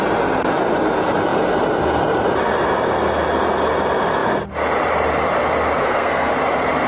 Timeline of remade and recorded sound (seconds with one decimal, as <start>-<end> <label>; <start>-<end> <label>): 0.0-5.8 recorded; 5.8-6.3 remade; 6.3-6.9 recorded